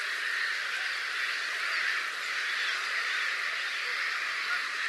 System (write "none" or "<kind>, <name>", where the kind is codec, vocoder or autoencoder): none